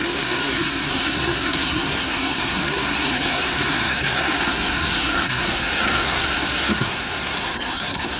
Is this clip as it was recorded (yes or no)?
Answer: no